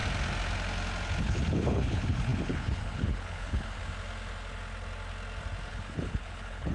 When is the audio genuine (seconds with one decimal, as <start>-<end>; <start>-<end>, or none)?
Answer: 0.0-1.2; 3.8-5.7